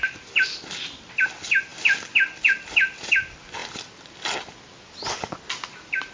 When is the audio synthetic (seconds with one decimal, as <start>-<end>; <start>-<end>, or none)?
none